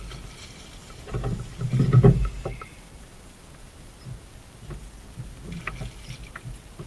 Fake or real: real